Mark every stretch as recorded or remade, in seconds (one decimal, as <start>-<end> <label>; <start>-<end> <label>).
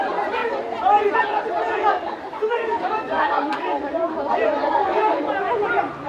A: 0.0-1.7 recorded; 1.7-3.9 remade; 3.9-4.6 recorded; 4.6-5.3 remade; 5.3-6.1 recorded